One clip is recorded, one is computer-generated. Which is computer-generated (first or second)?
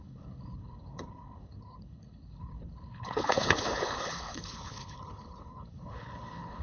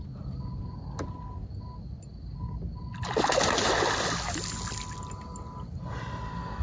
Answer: first